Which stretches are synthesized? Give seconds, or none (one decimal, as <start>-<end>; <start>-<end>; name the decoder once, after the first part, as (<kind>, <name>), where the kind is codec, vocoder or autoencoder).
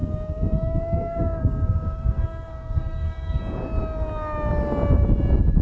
0.0-3.4 (codec, SNAC)